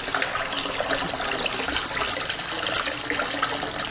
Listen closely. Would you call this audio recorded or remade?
recorded